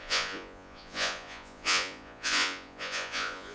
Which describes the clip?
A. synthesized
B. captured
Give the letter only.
A